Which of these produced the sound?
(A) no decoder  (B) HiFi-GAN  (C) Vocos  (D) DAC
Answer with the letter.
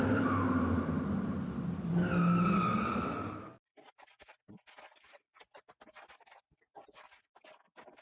A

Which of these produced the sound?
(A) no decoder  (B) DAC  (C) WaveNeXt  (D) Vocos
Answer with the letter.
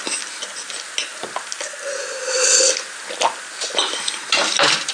A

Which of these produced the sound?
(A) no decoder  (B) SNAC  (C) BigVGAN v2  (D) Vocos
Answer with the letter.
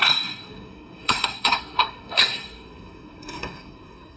B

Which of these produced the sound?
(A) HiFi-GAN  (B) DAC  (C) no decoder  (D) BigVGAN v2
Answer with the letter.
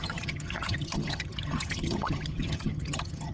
A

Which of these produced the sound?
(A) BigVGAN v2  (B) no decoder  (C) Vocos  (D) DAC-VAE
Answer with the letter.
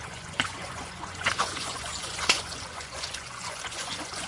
C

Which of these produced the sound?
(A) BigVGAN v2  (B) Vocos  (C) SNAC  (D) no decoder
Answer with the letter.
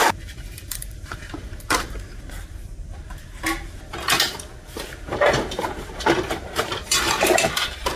A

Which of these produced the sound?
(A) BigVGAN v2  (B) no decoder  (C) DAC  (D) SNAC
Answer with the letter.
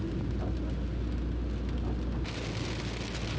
B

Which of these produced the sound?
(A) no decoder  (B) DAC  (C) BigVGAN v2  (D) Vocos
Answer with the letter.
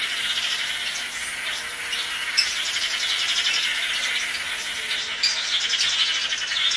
A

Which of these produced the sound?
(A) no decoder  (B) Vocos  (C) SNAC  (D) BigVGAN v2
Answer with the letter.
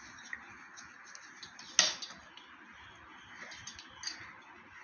A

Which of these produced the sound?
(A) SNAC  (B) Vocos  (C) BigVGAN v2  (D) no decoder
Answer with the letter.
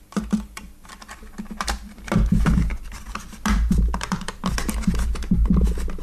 D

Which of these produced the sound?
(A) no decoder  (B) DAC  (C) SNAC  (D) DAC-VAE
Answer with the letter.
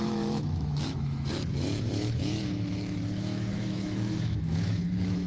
D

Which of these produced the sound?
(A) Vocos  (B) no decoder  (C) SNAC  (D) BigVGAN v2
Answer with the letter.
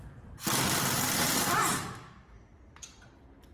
B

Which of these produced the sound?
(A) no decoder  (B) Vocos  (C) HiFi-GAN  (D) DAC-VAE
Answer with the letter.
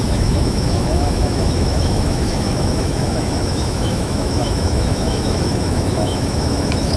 D